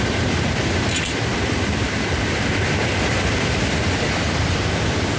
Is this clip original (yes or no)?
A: no